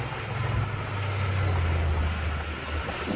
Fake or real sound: real